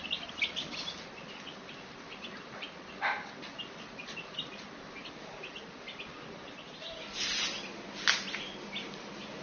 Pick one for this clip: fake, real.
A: real